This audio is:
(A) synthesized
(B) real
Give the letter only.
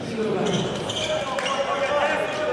B